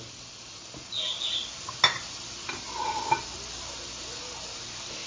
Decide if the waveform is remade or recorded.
recorded